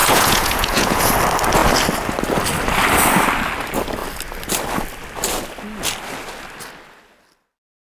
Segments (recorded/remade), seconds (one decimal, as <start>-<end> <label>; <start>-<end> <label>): 0.0-1.1 remade; 1.1-7.9 recorded